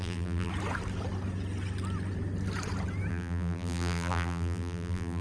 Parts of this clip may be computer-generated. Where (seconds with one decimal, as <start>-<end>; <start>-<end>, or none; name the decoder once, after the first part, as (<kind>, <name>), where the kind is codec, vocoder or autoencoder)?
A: 0.0-0.5 (vocoder, BigVGAN v2); 3.1-5.2